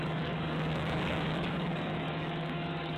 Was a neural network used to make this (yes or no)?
yes